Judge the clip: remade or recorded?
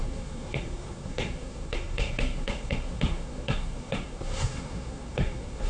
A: remade